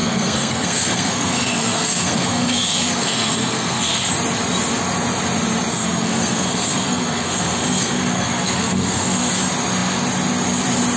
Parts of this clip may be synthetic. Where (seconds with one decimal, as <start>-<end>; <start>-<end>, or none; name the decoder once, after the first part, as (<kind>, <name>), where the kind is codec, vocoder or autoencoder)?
0.0-4.1 (codec, SNAC); 5.7-9.3